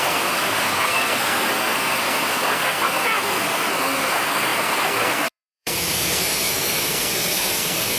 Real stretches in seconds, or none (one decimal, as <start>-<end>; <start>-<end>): none